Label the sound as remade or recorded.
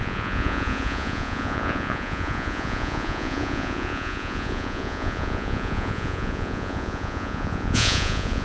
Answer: remade